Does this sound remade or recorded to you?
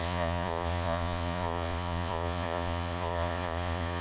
remade